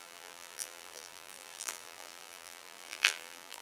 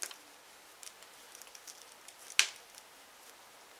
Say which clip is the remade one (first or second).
first